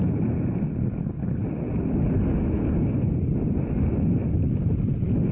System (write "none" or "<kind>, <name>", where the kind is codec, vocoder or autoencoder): none